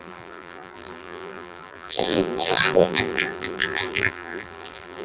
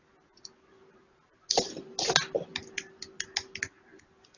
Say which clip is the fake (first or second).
first